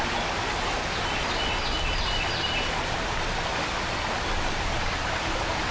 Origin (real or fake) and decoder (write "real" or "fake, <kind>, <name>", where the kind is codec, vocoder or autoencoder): real